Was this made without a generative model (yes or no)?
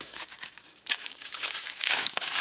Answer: no